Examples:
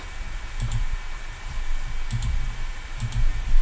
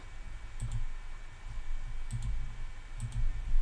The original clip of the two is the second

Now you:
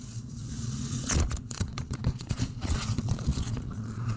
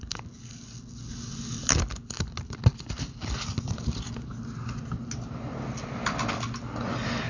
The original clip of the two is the second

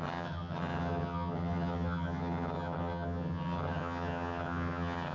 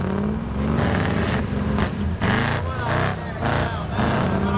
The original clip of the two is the second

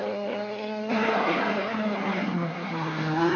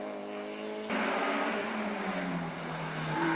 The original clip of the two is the second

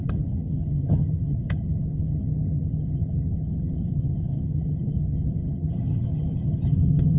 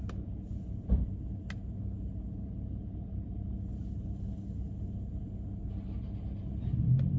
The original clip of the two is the second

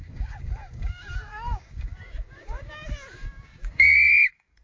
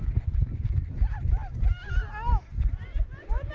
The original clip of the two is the second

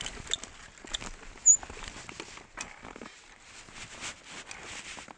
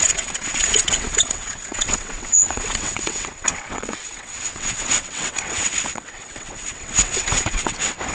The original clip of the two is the first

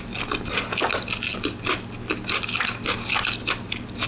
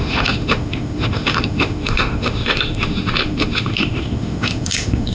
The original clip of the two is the first